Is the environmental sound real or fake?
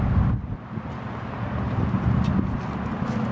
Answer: real